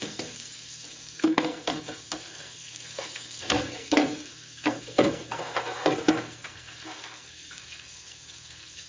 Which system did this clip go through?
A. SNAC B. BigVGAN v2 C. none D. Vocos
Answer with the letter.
A